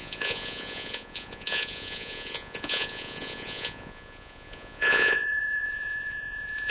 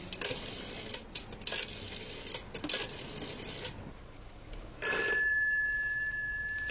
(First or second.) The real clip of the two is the second